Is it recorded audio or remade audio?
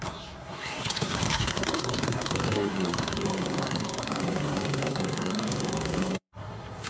remade